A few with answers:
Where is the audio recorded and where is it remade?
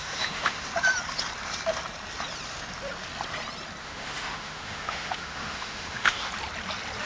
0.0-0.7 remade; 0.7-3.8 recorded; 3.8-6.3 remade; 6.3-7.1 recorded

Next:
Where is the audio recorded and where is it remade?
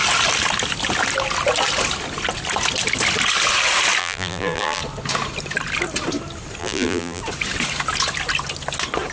0.0-4.0 recorded; 4.0-4.8 remade; 4.8-6.6 recorded; 6.6-7.2 remade; 7.2-9.1 recorded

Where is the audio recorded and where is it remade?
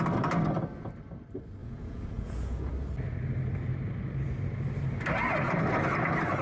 0.0-1.6 recorded; 1.6-2.7 remade; 2.7-6.4 recorded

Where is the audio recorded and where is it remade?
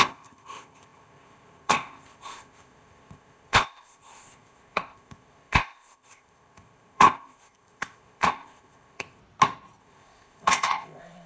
0.0-9.2 remade; 9.2-9.8 recorded; 9.8-11.3 remade